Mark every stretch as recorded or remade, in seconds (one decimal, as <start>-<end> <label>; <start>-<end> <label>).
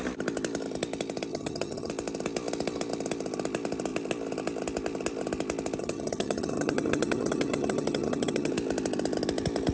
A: 0.0-1.3 recorded; 1.3-1.9 remade; 1.9-5.8 recorded; 5.8-8.5 remade; 8.5-9.7 recorded